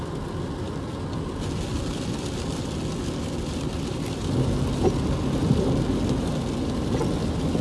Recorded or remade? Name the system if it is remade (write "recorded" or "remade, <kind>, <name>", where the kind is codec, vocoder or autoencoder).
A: recorded